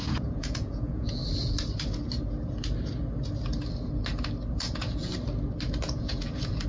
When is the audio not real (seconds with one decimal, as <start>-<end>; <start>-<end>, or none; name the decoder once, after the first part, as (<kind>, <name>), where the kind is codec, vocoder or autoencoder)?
0.0-1.2 (vocoder, Vocos); 4.5-5.1; 5.8-6.7